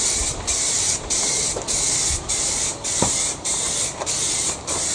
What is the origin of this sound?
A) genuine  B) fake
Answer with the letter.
B